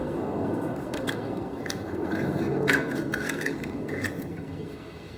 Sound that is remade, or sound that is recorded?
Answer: remade